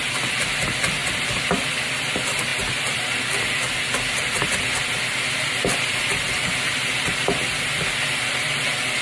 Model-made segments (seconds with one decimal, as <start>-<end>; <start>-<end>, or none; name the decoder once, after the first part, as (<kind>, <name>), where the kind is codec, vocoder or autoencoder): none